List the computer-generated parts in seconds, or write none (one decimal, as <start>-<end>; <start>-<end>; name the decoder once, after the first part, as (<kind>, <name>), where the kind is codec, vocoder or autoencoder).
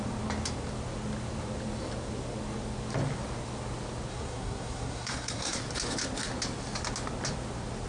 4.1-5.6 (codec, SNAC)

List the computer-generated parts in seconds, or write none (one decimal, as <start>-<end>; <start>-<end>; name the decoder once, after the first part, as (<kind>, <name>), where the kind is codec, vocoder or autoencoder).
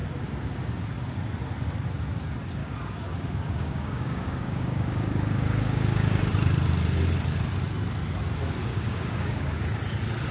2.6-6.2 (codec, DAC); 8.7-9.6